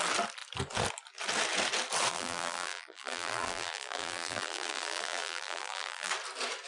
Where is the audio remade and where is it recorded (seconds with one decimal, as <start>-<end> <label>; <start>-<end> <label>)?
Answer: 0.0-2.1 recorded; 2.1-6.1 remade; 6.1-6.7 recorded